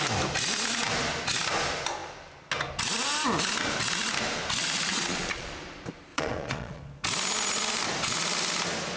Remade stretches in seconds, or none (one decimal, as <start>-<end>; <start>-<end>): 4.9-5.5; 6.1-6.8